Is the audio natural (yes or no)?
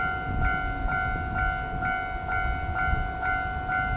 yes